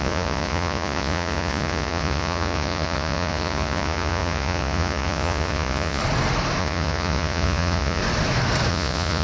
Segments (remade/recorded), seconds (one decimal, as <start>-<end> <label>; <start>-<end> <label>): 0.0-6.0 remade; 6.0-6.6 recorded; 6.6-8.0 remade; 8.0-8.7 recorded; 8.7-9.2 remade